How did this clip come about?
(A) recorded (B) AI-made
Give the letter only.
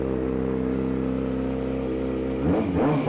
A